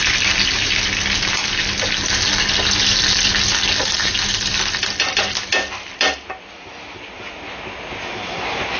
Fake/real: real